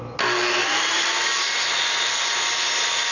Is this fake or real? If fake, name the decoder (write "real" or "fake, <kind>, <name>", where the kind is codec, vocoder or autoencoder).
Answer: real